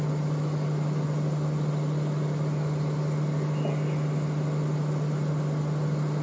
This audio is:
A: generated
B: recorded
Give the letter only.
B